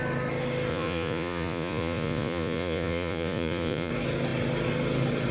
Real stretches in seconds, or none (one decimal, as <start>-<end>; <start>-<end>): 0.0-0.7; 3.9-5.3